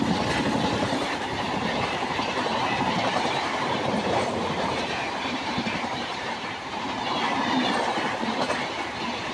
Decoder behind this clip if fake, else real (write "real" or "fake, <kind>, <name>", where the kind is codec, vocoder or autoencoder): fake, vocoder, BigVGAN v2